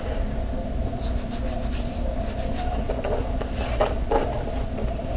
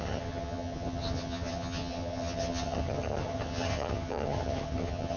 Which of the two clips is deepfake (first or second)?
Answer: second